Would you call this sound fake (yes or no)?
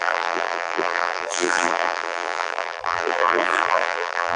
yes